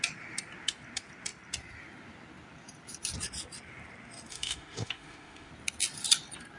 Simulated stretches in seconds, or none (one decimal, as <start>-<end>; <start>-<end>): 4.3-5.5